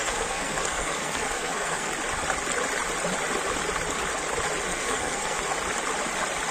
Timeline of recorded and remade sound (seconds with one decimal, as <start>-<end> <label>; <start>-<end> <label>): 0.0-1.9 remade; 1.9-4.7 recorded; 4.7-5.4 remade; 5.4-6.5 recorded